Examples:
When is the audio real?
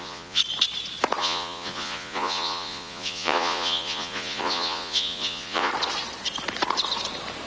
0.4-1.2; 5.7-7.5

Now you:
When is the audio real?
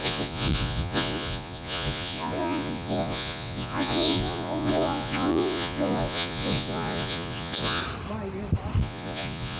7.8-8.8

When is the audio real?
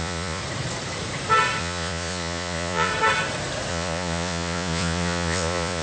0.4-1.6; 2.9-3.7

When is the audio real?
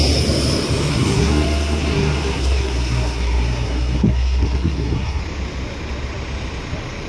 0.0-0.9; 5.2-7.1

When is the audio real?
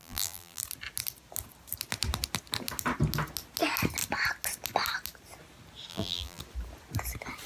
0.6-5.9; 6.4-7.5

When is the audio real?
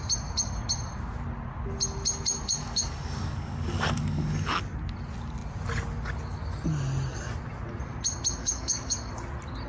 0.0-2.6; 4.6-8.4; 9.1-9.7